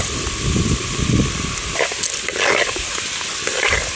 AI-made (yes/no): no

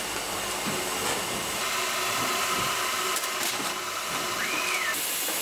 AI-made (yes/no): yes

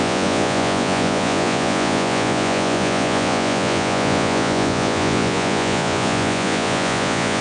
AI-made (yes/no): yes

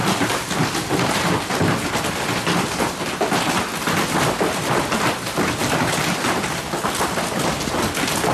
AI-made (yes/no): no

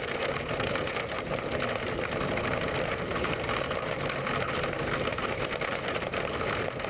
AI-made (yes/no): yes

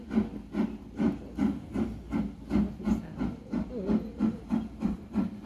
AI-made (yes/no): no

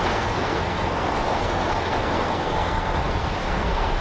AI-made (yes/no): yes